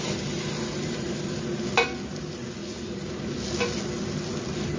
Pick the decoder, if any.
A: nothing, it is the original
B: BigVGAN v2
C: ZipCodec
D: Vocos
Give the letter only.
A